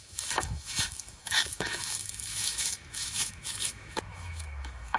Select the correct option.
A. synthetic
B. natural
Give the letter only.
A